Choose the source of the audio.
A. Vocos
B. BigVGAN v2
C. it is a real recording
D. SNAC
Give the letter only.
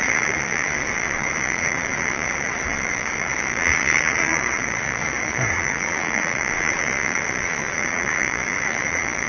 A